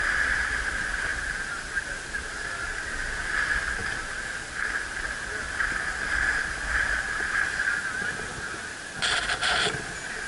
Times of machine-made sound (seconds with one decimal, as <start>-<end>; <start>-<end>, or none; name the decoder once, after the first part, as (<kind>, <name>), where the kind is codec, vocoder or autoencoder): none